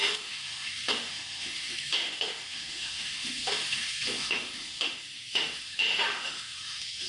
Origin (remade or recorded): remade